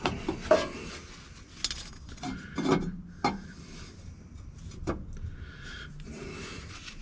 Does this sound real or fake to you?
real